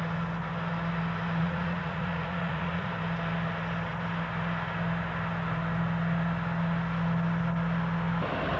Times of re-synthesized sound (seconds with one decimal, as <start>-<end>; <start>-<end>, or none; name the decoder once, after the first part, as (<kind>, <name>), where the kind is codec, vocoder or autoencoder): 1.4-2.9 (vocoder, Vocos)